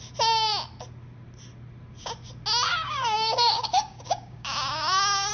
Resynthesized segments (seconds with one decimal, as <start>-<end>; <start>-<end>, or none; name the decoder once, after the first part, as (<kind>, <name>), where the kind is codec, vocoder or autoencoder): 2.7-5.3 (codec, DAC)